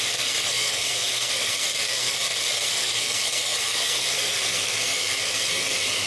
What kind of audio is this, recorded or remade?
remade